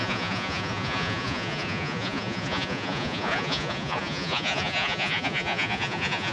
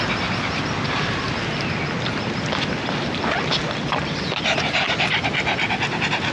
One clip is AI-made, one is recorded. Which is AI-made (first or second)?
first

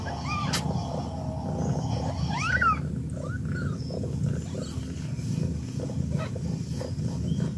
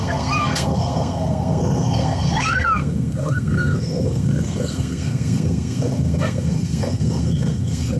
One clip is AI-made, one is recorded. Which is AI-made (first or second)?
second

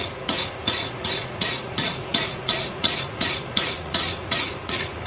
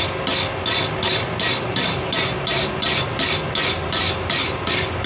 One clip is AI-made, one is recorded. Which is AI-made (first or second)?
first